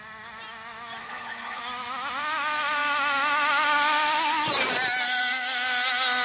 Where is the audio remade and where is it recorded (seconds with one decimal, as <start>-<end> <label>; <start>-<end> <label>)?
0.0-1.0 recorded; 1.0-1.6 remade; 1.6-6.2 recorded